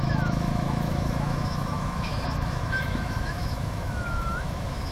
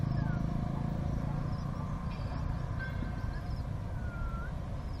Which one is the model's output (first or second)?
first